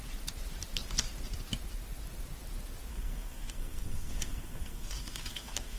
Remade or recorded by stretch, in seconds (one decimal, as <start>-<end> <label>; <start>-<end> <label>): 0.0-2.9 recorded; 2.9-5.8 remade